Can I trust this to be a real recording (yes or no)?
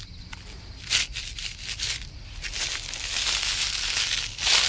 yes